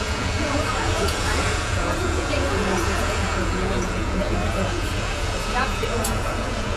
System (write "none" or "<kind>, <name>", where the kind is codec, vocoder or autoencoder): vocoder, Vocos